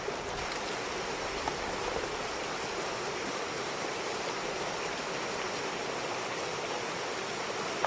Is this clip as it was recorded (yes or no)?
yes